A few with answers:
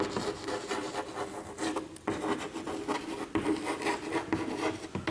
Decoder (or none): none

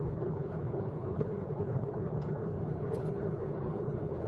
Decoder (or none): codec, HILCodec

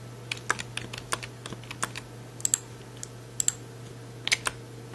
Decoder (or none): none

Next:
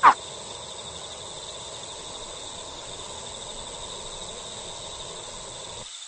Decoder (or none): none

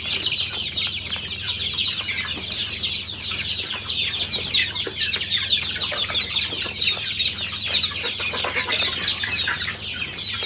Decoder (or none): none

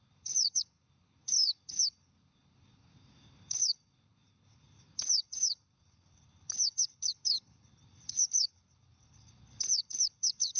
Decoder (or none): codec, HILCodec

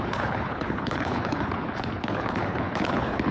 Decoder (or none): codec, HILCodec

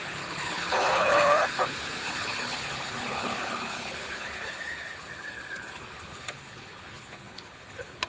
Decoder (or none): codec, HILCodec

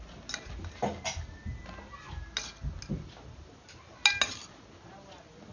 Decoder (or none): none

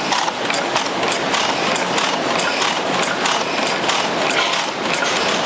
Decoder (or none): none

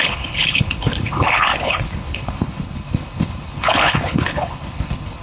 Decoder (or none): codec, HILCodec